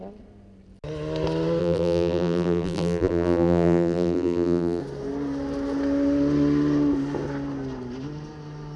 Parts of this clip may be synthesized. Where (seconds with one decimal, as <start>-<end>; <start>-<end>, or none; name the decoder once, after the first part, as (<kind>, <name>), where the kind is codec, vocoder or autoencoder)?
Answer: 1.6-4.8 (vocoder, BigVGAN v2)